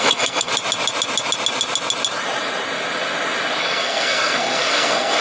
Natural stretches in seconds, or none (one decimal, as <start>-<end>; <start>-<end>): 0.5-3.6